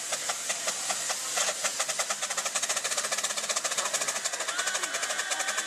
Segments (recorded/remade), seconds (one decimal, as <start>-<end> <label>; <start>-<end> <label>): 0.0-5.7 recorded